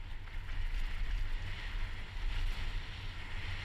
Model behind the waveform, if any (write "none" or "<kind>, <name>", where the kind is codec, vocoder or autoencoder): none